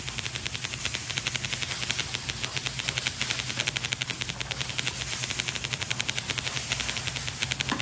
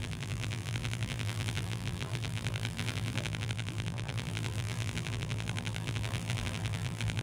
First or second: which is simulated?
second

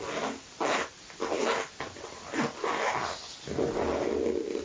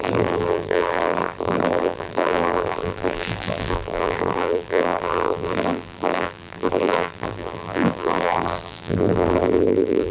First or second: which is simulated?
second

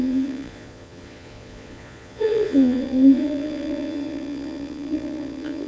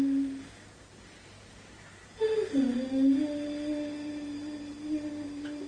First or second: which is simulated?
first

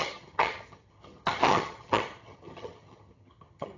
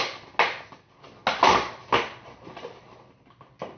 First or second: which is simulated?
first